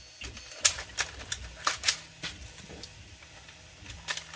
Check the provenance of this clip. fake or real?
fake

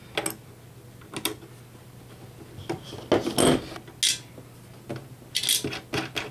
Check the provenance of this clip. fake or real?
real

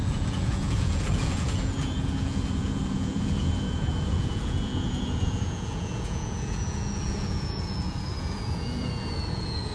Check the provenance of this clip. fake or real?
fake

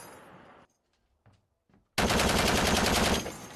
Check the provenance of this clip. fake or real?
real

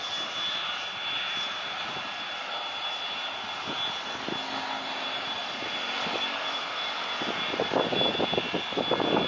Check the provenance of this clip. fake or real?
real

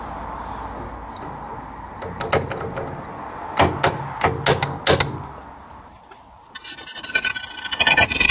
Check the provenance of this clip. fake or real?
real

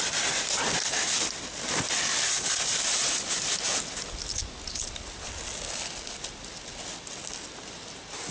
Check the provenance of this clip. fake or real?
real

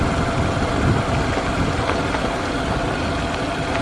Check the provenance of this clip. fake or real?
real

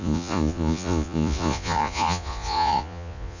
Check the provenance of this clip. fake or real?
fake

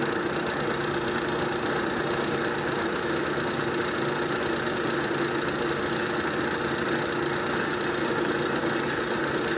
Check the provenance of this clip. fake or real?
real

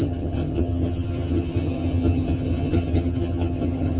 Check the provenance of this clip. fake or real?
fake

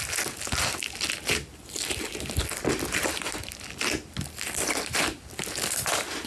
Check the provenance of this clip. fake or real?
real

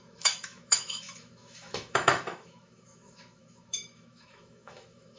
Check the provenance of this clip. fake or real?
fake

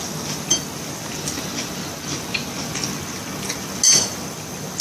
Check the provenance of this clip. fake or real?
real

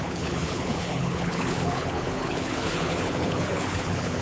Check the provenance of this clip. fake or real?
fake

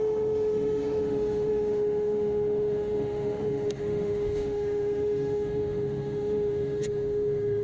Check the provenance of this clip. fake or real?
fake